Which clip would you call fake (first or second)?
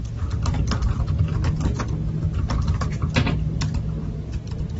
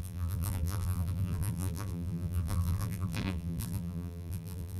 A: second